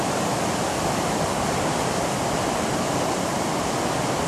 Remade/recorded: recorded